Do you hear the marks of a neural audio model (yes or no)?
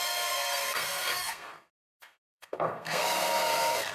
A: yes